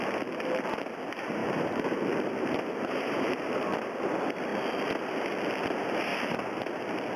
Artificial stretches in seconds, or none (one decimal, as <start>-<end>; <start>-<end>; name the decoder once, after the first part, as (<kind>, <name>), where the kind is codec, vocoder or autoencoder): 1.4-4.0 (vocoder, BigVGAN v2); 6.1-6.6